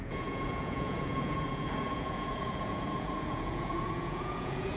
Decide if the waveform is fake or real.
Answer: fake